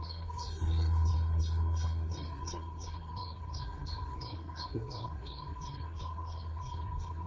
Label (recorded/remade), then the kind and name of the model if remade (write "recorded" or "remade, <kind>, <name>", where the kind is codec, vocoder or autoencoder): remade, codec, SNAC